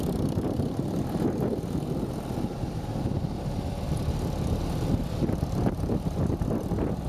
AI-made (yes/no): yes